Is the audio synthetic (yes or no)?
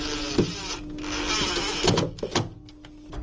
no